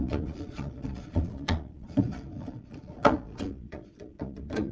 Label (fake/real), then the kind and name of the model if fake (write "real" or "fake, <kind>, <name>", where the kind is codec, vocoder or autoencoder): fake, vocoder, Vocos